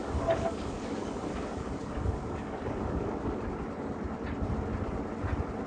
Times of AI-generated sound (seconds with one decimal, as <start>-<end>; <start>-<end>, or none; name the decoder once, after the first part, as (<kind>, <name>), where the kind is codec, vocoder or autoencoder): 0.0-3.4 (codec, DAC)